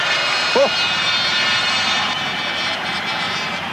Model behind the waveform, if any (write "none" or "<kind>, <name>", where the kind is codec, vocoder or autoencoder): vocoder, BigVGAN v2